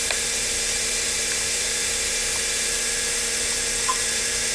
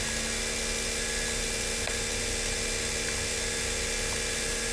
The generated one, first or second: first